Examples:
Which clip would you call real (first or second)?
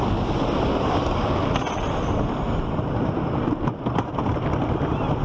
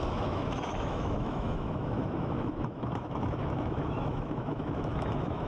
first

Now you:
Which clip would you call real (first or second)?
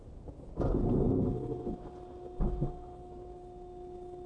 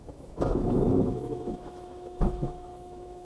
first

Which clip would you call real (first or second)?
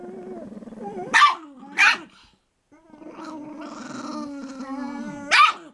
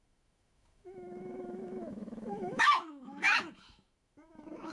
first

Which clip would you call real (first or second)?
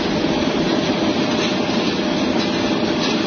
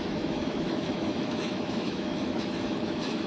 first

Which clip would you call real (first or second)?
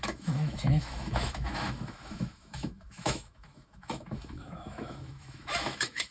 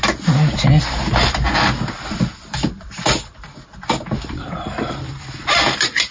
second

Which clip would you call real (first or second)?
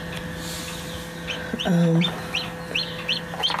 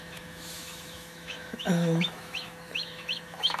first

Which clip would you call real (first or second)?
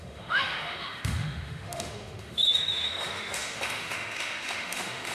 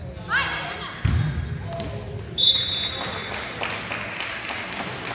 second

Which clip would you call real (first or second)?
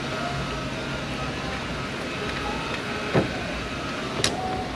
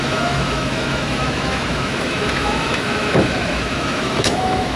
first